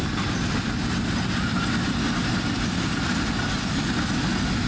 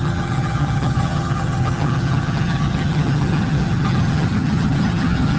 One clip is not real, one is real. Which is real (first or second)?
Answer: first